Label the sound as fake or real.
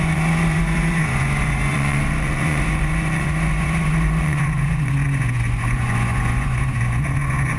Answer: fake